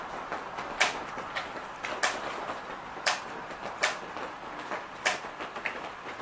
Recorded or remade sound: recorded